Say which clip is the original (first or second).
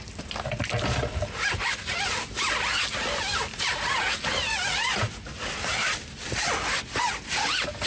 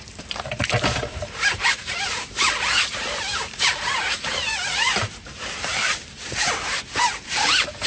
first